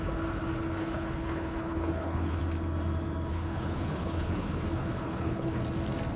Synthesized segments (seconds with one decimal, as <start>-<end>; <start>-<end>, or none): 0.8-2.4; 3.3-5.6